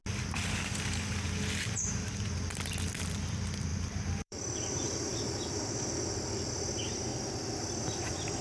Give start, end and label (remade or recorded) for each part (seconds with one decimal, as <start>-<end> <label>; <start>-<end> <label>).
0.0-3.7 recorded; 3.7-5.7 remade; 5.7-8.4 recorded